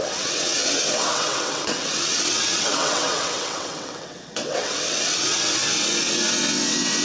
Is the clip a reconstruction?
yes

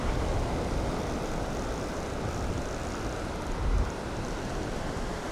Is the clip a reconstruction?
no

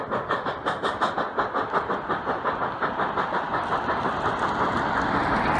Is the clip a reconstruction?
no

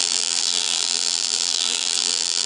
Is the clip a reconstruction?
yes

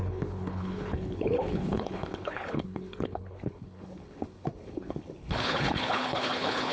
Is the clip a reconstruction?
yes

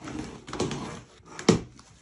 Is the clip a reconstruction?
no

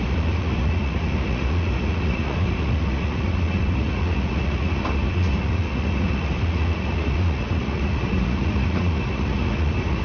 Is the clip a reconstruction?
yes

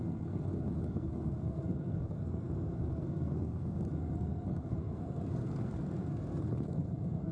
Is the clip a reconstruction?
yes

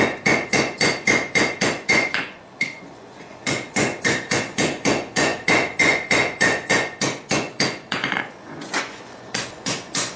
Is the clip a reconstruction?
yes